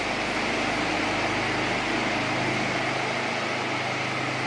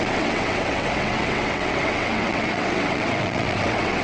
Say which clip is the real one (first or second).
first